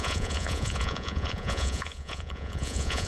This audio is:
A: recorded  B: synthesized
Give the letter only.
B